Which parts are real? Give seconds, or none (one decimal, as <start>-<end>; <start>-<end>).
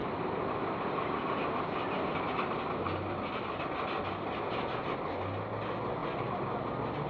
0.0-7.1